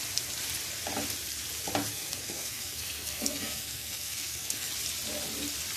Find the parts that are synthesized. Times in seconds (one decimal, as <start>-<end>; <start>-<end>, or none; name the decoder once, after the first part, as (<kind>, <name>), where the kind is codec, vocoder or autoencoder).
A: 1.9-4.7 (codec, SNAC)